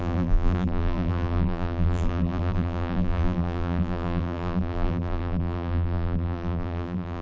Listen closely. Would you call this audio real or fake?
fake